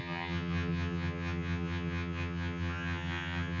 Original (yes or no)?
no